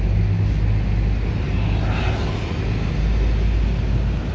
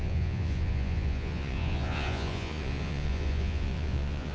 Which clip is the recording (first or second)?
first